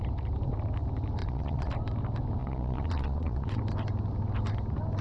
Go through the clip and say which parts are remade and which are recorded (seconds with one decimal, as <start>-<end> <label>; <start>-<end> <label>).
0.0-1.2 recorded; 1.2-1.7 remade; 1.7-2.4 recorded; 2.4-3.6 remade; 3.6-5.0 recorded